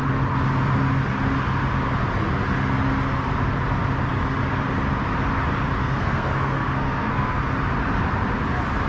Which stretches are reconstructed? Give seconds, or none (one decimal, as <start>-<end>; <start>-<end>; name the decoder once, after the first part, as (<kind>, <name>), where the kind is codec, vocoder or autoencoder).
5.8-7.4 (codec, SNAC)